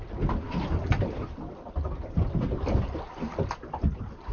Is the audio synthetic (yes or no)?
no